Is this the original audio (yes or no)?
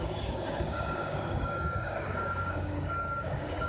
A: no